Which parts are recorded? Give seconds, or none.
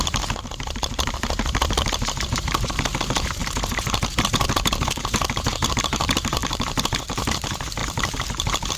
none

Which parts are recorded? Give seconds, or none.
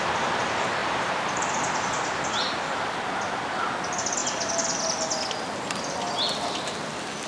0.0-0.8; 1.5-7.3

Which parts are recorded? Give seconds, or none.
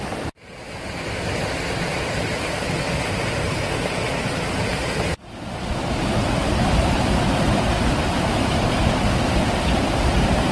0.0-6.4; 8.9-10.5